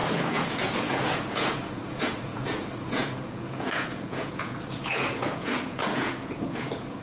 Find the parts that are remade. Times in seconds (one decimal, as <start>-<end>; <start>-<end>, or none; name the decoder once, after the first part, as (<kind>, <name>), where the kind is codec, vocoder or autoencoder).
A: 0.0-7.0 (vocoder, Vocos)